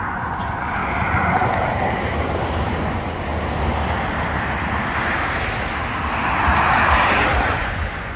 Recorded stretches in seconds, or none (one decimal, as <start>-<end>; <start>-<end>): 0.8-2.8; 3.3-7.4